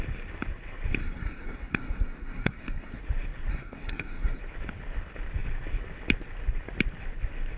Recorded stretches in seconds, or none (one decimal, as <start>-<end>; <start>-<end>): 0.0-1.0; 3.0-3.5; 4.4-7.6